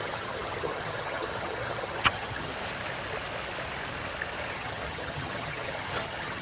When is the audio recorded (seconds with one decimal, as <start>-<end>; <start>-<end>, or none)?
2.5-4.5